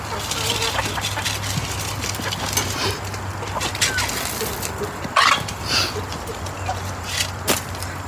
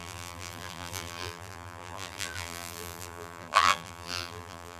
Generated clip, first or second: second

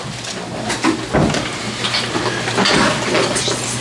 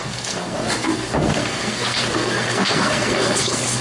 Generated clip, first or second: second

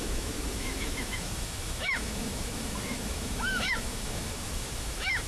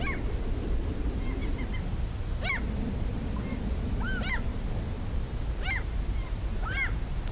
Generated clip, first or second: first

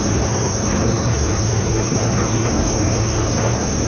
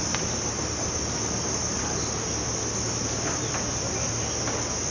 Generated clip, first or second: first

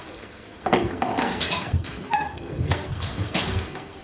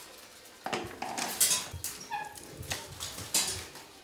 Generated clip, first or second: first